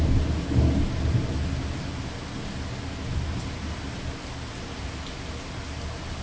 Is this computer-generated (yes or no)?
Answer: no